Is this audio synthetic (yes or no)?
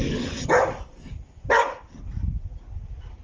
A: no